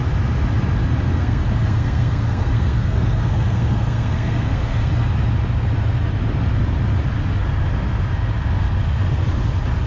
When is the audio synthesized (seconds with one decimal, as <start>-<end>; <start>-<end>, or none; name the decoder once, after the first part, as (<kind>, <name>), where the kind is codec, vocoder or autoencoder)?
1.1-4.9 (codec, SNAC)